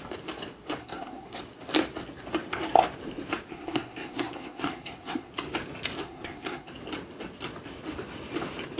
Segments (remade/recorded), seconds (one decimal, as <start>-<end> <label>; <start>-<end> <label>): 0.0-0.8 recorded; 0.8-1.4 remade; 1.4-3.5 recorded; 3.5-5.3 remade; 5.3-6.0 recorded; 6.0-6.7 remade; 6.7-8.8 recorded